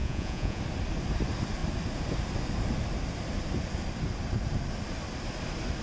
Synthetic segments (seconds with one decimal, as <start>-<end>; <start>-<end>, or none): 0.0-0.6